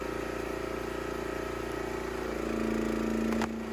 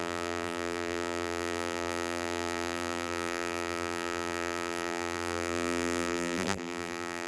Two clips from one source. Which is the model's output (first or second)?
second